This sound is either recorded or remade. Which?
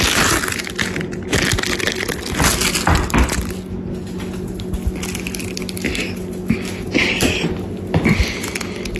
recorded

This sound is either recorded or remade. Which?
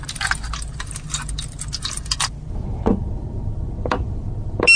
recorded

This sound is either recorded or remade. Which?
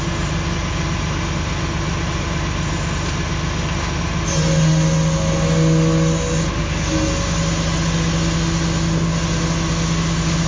recorded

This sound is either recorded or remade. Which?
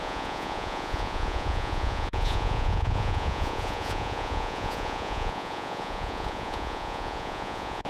remade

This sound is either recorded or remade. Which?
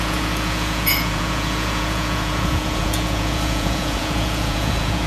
remade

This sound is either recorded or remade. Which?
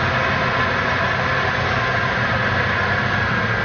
recorded